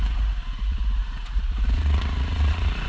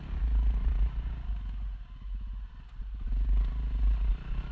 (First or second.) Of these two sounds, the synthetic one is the first